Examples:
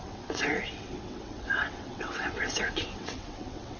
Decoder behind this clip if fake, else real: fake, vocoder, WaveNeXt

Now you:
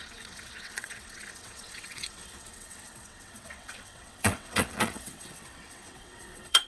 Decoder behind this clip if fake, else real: fake, vocoder, WaveNeXt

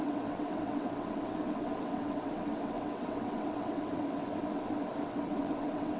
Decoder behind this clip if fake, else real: fake, vocoder, WaveNeXt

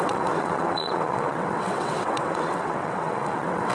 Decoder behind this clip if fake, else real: fake, vocoder, WaveNeXt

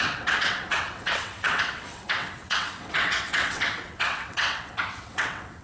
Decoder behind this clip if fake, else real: fake, vocoder, WaveNeXt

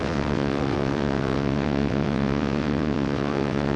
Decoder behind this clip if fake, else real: fake, vocoder, WaveNeXt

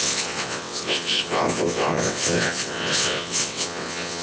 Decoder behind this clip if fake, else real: fake, vocoder, WaveNeXt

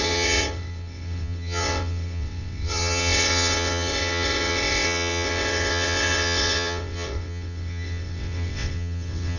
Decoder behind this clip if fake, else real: fake, vocoder, WaveNeXt